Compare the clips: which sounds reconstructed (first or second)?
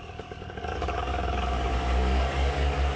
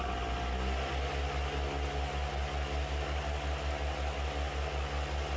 first